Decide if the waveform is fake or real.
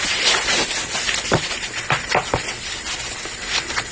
real